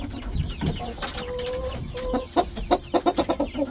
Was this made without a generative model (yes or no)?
yes